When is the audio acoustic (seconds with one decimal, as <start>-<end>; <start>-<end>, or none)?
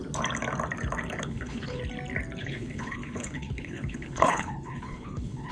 0.0-1.2; 1.8-2.4